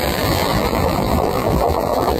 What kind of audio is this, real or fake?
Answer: fake